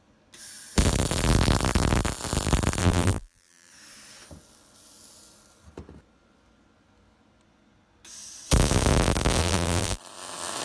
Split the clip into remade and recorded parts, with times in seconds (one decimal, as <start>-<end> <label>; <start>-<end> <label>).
0.0-2.8 recorded; 2.8-3.7 remade; 3.7-9.4 recorded; 9.4-10.0 remade; 10.0-10.6 recorded